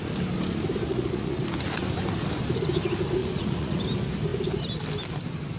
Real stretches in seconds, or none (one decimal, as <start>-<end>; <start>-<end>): 0.0-0.9; 1.4-3.2; 3.8-5.6